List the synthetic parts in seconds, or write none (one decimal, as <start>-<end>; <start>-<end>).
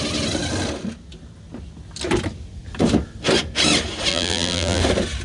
4.1-4.8